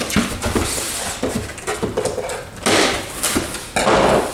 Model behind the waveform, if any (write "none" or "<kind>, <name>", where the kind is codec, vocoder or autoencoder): none